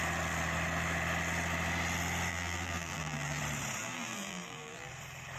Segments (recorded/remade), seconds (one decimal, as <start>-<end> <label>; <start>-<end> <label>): 0.0-2.3 recorded; 2.3-3.4 remade; 3.4-3.8 recorded; 3.8-4.9 remade; 4.9-5.4 recorded